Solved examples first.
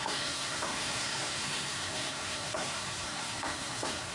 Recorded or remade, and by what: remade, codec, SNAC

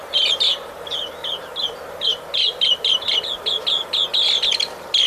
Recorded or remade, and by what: recorded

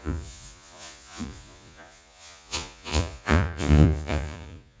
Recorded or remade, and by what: remade, vocoder, Vocos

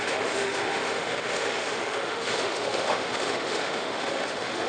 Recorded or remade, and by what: remade, autoencoder, DAC-VAE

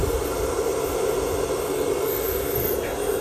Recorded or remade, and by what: recorded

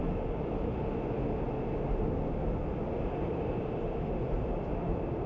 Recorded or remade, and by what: recorded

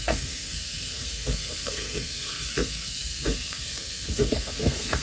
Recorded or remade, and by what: remade, codec, SNAC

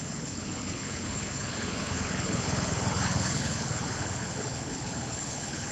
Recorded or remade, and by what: remade, codec, HILCodec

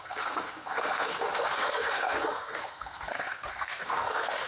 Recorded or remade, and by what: remade, codec, SNAC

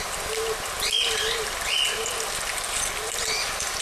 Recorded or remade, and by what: recorded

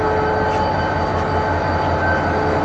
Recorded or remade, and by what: recorded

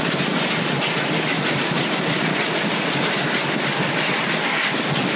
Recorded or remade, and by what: recorded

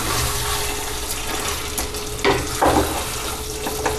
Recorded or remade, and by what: recorded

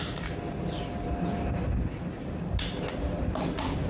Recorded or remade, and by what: recorded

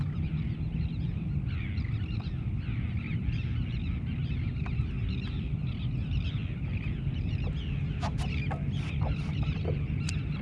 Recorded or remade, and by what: recorded